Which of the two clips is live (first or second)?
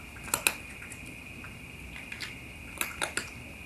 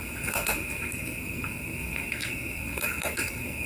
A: first